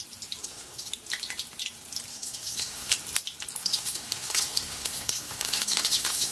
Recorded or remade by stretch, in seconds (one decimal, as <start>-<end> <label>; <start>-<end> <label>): 0.0-0.4 recorded; 0.4-0.9 remade; 0.9-2.1 recorded; 2.1-2.9 remade; 2.9-3.6 recorded; 3.6-6.3 remade